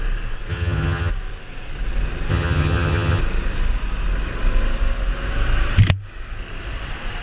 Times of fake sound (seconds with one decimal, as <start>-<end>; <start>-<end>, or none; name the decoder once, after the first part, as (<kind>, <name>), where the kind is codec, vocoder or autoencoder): 0.5-1.1 (vocoder, HiFi-GAN); 2.3-3.2

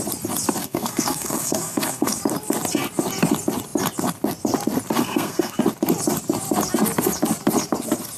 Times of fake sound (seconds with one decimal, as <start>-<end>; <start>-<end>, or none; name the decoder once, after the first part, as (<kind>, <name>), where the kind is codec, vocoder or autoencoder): 0.6-2.2 (codec, SNAC); 5.0-5.6

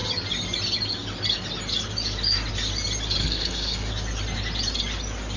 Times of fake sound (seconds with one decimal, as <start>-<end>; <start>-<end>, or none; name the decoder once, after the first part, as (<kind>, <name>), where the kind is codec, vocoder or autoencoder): 3.2-3.9 (codec, SNAC)

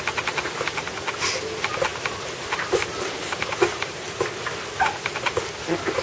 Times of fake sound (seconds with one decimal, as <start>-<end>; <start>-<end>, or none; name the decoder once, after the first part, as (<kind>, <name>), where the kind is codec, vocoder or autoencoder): none

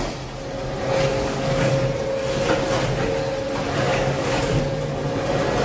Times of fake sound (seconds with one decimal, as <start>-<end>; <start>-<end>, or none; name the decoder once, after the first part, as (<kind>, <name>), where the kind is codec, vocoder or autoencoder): 1.1-1.7 (codec, DAC); 3.9-4.6

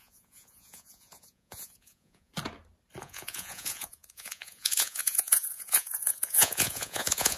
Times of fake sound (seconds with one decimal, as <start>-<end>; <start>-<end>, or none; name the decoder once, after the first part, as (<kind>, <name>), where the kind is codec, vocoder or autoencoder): 0.0-2.3 (vocoder, Vocos); 3.0-7.4